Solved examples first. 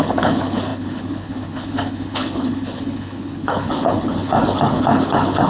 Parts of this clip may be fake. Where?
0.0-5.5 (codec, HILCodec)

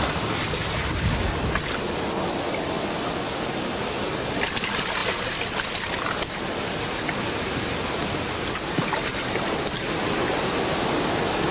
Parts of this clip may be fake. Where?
none

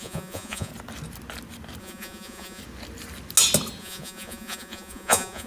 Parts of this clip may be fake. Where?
0.0-0.7 (vocoder, Vocos); 1.8-2.6; 3.8-5.5

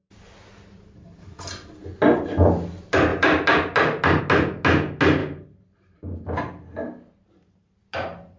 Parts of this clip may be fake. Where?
5.2-7.8 (vocoder, BigVGAN v2)